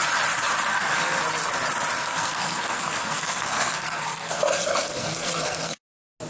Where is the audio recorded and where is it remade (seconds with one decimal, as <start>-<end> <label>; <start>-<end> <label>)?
0.0-0.7 recorded; 0.7-1.2 remade; 1.2-2.0 recorded; 2.0-5.8 remade; 5.8-6.3 recorded